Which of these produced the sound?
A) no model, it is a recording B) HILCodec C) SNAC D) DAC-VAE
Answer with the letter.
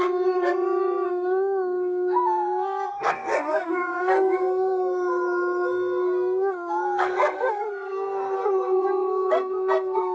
C